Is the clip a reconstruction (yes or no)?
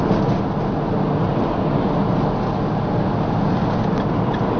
no